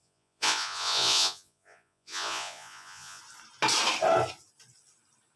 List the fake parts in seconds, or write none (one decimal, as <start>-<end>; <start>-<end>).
0.0-3.2